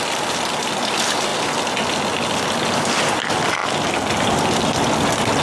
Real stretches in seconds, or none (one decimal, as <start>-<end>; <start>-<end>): 0.0-5.4